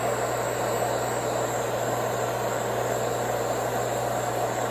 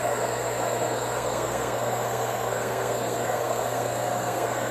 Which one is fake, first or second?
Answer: second